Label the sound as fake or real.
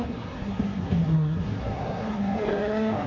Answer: fake